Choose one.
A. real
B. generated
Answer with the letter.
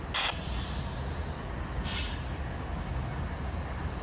A